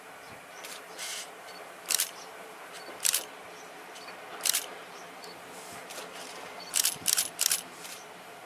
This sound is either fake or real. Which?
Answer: fake